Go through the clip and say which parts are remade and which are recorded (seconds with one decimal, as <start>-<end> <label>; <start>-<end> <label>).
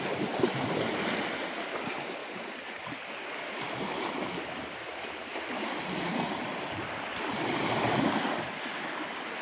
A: 0.0-2.2 recorded; 2.2-2.8 remade; 2.8-9.4 recorded